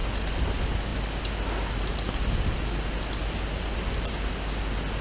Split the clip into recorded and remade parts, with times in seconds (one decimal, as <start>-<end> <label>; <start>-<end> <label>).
0.0-5.0 recorded